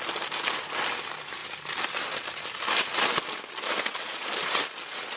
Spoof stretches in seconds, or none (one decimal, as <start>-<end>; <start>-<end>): 1.4-3.0